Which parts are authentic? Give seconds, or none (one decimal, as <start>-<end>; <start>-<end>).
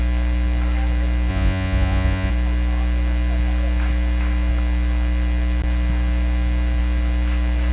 0.0-1.3; 2.3-7.7